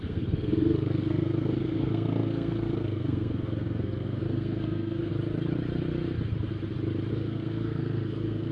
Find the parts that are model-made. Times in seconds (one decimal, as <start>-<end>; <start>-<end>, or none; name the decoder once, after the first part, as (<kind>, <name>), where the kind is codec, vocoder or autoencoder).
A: 0.0-5.1 (codec, SNAC); 7.1-8.5